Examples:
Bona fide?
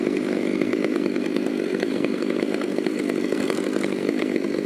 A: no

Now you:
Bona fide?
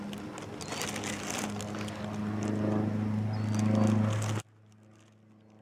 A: yes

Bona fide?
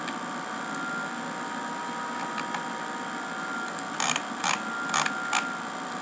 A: yes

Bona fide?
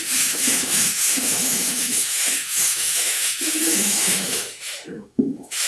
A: no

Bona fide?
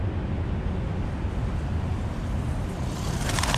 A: yes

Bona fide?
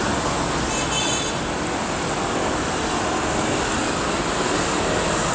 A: yes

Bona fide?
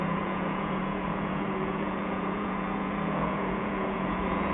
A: no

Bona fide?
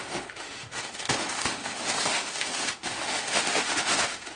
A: no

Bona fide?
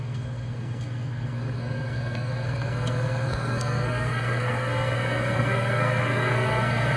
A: no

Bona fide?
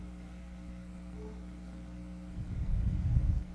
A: no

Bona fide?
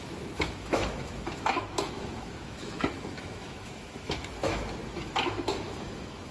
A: no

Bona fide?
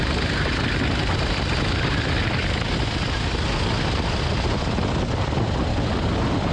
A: yes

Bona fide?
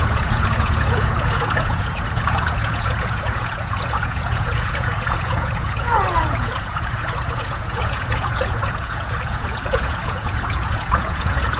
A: no